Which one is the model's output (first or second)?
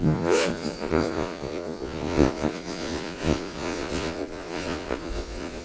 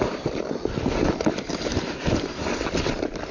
first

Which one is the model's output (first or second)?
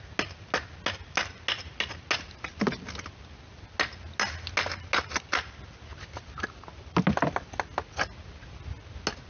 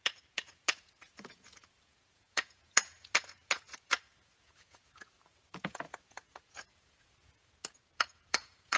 second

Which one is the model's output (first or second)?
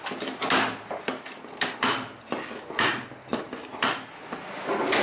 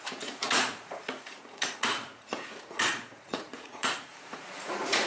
second